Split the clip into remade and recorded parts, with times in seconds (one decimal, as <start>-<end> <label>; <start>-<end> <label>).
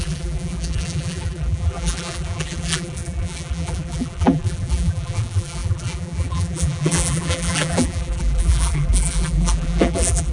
0.0-10.3 remade